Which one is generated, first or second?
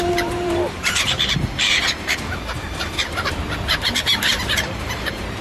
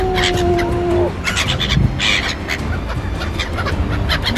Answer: first